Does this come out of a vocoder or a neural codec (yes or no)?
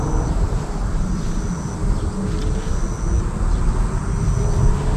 no